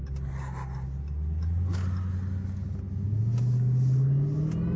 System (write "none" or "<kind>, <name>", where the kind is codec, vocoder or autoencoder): none